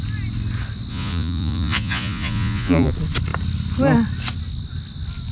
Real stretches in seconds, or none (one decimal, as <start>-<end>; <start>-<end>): 0.0-0.9; 2.9-5.3